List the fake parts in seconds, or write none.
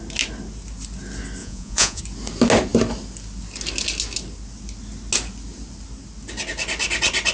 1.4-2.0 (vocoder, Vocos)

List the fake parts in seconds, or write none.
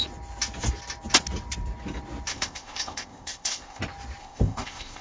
2.3-3.8 (codec, ZipCodec); 4.2-5.0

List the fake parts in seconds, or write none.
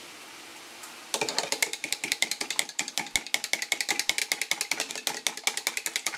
0.5-2.4 (vocoder, BigVGAN v2)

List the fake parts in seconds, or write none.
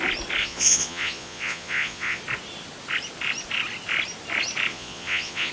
0.4-2.2 (vocoder, Vocos); 4.7-5.5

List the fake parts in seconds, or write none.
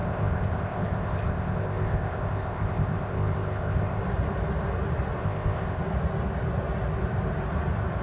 0.0-4.0 (codec, ZipCodec); 5.2-5.8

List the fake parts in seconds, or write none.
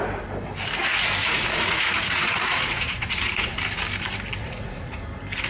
1.2-3.5 (vocoder, Vocos); 4.4-5.0